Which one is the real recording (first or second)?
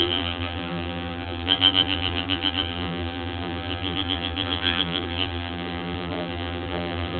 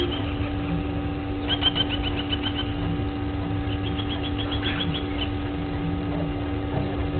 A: second